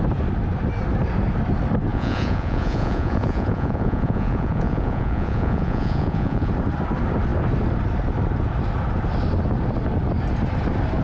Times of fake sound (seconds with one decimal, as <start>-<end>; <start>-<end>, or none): 1.9-6.5